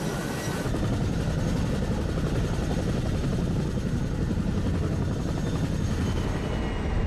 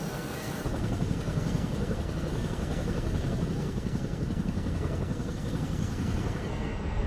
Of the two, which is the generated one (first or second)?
second